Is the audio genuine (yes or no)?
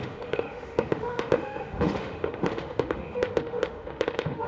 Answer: no